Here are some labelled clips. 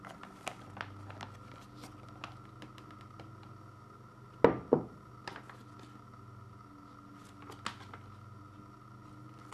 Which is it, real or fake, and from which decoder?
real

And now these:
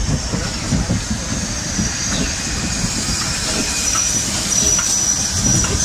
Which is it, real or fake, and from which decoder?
real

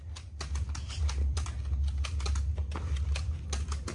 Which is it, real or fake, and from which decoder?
real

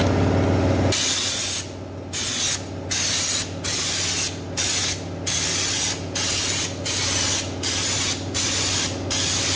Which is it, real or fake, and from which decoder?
real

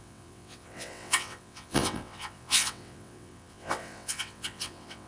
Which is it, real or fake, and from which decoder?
fake, vocoder, WaveNeXt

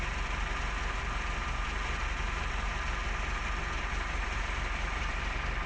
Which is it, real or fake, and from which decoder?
real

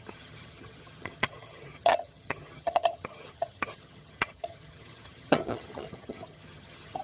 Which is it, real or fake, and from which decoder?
fake, vocoder, HiFi-GAN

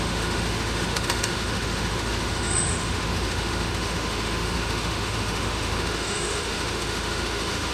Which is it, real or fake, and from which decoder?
fake, autoencoder, DAC-VAE